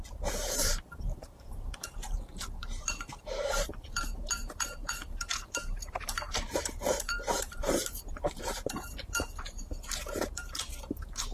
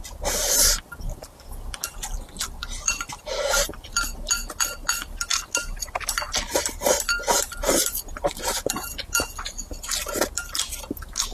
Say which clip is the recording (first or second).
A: second